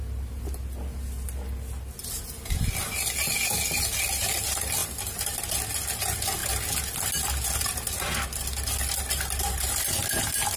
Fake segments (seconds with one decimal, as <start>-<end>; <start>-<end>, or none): none